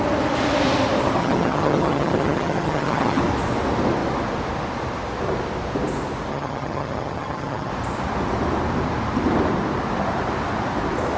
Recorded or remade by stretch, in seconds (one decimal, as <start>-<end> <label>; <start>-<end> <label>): 0.0-1.2 recorded; 1.2-3.2 remade; 3.2-6.3 recorded; 6.3-7.7 remade; 7.7-11.2 recorded